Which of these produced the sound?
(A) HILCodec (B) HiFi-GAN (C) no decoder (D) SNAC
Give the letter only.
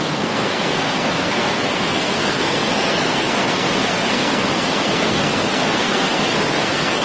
D